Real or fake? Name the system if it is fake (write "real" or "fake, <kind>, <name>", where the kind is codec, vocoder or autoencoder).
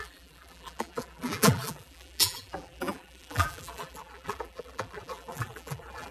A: fake, vocoder, BigVGAN v2